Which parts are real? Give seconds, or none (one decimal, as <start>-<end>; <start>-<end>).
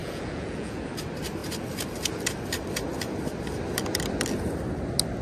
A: 0.8-5.2